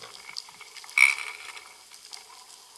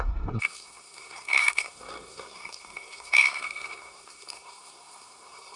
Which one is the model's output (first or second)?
second